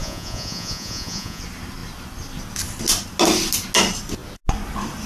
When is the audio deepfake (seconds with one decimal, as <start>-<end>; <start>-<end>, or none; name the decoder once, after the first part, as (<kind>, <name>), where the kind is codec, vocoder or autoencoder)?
0.0-1.4 (vocoder, Vocos)